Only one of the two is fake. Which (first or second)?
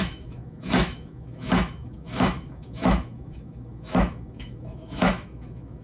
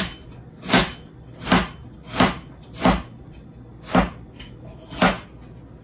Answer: first